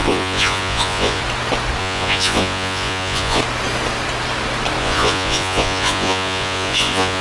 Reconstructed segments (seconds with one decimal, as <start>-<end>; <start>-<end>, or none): 0.0-1.2; 1.8-3.4; 4.8-7.2